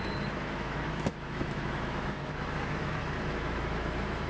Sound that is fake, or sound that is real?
fake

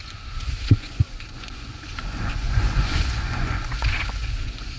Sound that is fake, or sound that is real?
fake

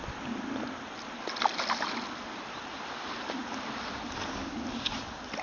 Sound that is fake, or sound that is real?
real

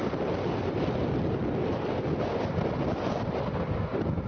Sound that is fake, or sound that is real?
real